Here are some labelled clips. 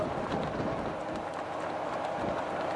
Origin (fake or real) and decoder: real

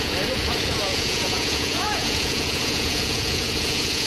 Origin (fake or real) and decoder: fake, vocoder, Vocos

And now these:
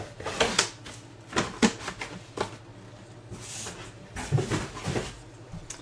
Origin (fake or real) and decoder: real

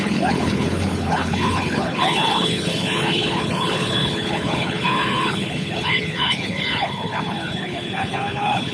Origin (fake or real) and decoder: fake, codec, HILCodec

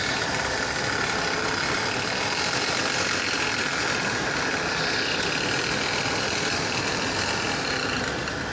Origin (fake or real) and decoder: real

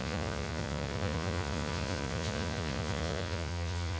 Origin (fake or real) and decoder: fake, vocoder, Vocos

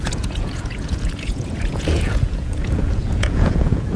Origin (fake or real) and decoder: fake, vocoder, Vocos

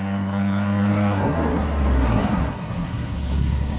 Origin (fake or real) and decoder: fake, codec, SNAC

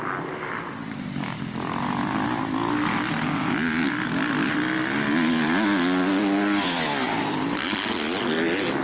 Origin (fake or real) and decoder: real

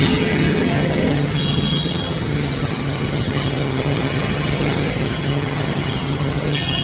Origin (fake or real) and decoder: fake, vocoder, HiFi-GAN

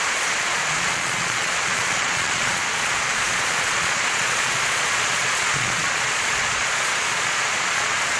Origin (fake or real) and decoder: fake, vocoder, Vocos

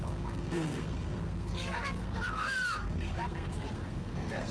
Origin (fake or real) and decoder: fake, codec, SNAC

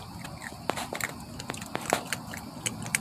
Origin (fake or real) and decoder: real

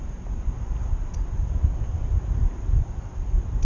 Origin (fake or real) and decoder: real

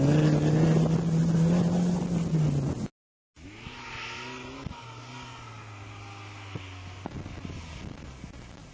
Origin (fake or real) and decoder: real